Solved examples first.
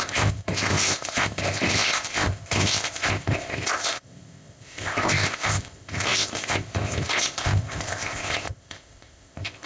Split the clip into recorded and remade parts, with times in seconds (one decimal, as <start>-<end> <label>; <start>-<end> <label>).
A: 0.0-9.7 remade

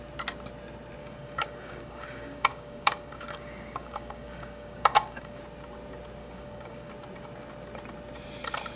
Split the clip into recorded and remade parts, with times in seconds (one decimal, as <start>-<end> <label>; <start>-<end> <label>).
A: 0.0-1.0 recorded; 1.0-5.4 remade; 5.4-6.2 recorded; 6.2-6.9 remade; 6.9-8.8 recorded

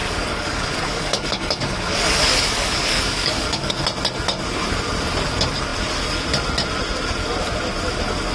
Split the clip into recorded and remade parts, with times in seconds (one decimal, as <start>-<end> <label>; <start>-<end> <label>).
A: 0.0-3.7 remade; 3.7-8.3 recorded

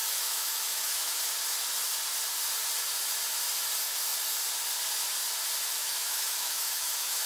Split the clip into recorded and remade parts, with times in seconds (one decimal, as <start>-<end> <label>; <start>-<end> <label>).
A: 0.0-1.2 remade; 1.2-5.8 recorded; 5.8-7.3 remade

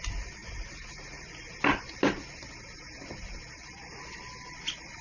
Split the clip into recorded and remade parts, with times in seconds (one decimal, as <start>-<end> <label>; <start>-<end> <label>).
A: 0.0-5.0 recorded